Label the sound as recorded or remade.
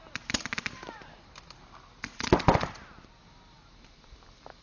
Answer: recorded